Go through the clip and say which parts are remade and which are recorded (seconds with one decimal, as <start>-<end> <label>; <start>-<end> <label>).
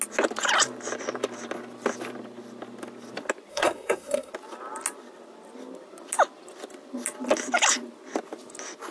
0.0-3.5 recorded; 3.5-4.3 remade; 4.3-8.9 recorded